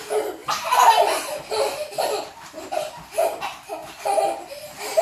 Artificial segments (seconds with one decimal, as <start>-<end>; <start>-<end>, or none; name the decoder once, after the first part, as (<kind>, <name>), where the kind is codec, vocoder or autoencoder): 0.4-3.4 (vocoder, BigVGAN v2); 3.8-4.6